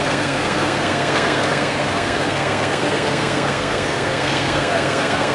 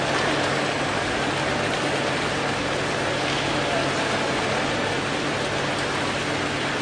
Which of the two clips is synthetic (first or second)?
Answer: first